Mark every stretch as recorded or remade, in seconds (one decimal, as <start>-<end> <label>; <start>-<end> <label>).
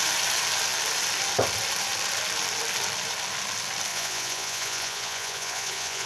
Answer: 0.0-3.9 recorded; 3.9-6.1 remade